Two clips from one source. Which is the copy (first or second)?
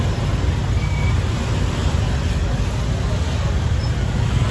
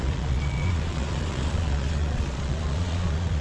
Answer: second